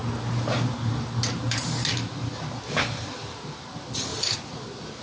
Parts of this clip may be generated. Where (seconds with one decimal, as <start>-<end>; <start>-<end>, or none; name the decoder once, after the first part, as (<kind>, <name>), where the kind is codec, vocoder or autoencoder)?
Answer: 0.0-2.1 (vocoder, BigVGAN v2); 4.1-4.6